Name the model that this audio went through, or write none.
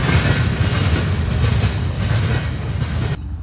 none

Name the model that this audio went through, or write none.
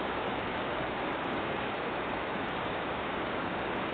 codec, DAC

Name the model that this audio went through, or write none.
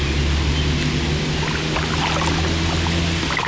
none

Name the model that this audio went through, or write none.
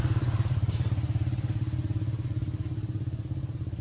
none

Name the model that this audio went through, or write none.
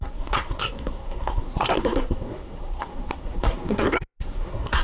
codec, SNAC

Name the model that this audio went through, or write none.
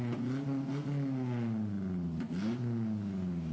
none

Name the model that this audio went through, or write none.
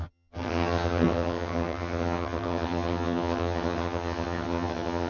vocoder, HiFi-GAN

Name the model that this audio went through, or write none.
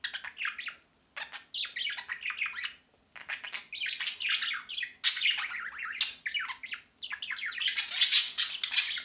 none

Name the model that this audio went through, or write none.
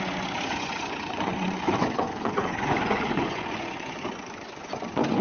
vocoder, Vocos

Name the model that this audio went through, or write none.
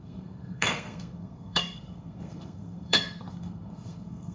codec, SNAC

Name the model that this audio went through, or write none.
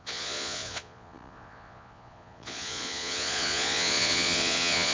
vocoder, Vocos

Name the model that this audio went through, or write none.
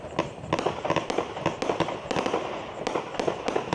none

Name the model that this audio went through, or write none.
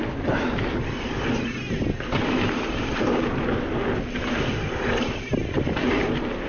none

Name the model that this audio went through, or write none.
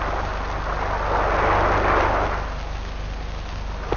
none